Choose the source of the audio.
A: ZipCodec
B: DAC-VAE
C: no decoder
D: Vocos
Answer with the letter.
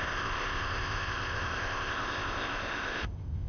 A